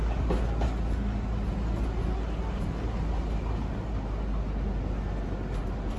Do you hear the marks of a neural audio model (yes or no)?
no